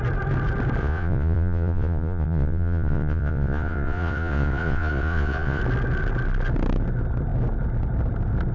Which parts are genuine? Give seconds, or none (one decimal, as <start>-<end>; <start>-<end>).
0.0-0.8; 5.6-8.5